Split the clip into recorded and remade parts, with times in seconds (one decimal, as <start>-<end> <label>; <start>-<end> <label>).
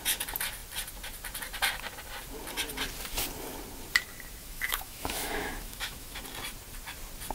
0.0-4.4 recorded; 4.4-6.2 remade; 6.2-7.3 recorded